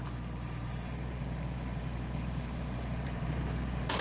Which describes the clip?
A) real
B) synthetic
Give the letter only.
B